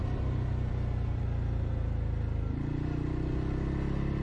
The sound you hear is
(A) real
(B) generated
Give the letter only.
A